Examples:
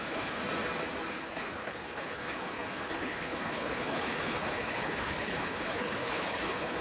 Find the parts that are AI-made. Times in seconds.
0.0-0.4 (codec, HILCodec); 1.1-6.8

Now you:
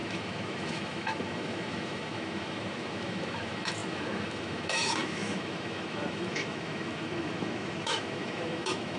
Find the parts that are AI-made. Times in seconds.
0.0-9.0 (autoencoder, DAC-VAE)

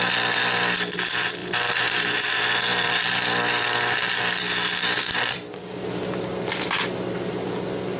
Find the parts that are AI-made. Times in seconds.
1.4-2.1 (vocoder, BigVGAN v2); 2.7-3.3